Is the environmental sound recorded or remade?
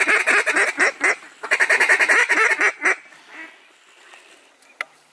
recorded